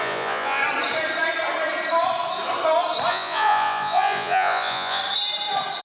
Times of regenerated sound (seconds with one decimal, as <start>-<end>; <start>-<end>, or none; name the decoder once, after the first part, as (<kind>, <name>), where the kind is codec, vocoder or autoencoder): 0.0-0.6 (vocoder, Vocos); 3.1-5.0